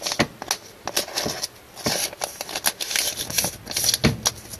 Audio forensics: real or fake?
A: real